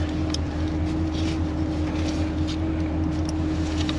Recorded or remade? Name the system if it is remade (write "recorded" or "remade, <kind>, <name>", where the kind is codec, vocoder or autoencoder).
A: recorded